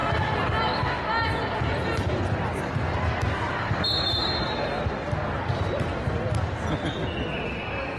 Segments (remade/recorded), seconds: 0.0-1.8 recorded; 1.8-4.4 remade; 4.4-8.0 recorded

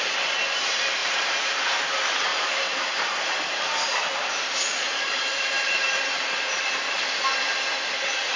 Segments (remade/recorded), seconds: 0.0-1.0 recorded; 1.0-1.6 remade; 1.6-2.3 recorded; 2.3-6.3 remade; 6.3-8.4 recorded

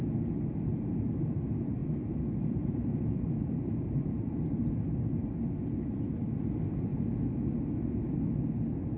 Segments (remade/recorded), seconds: 0.0-0.7 recorded; 0.7-1.4 remade; 1.4-1.8 recorded; 1.8-4.1 remade; 4.1-9.0 recorded

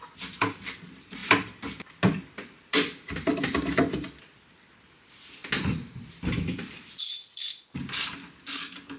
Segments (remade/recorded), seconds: 0.0-1.2 remade; 1.2-4.2 recorded; 4.2-5.4 remade; 5.4-9.0 recorded

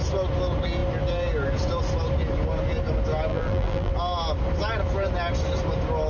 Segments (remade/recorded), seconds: 0.0-3.3 recorded; 3.3-3.9 remade; 3.9-6.1 recorded

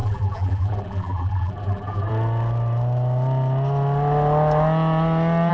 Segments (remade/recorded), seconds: 0.0-2.1 remade; 2.1-5.5 recorded

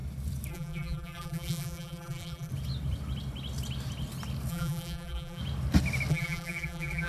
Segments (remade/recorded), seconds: 0.0-0.5 recorded; 0.5-2.5 remade; 2.5-4.5 recorded; 4.5-5.4 remade; 5.4-6.1 recorded; 6.1-7.1 remade

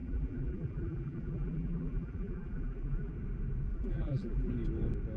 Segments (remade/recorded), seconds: 0.0-3.1 remade; 3.1-3.7 recorded; 3.7-4.5 remade; 4.5-5.2 recorded